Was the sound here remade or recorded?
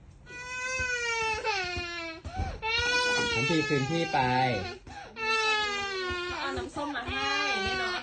recorded